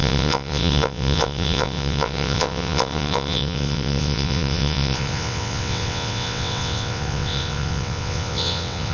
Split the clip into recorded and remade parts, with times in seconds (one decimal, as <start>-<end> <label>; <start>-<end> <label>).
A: 0.0-8.9 remade